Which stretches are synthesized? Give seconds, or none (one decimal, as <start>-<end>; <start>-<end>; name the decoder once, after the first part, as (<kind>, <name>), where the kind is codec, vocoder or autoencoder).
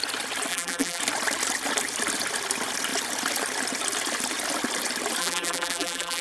0.5-1.0 (vocoder, BigVGAN v2); 5.2-6.2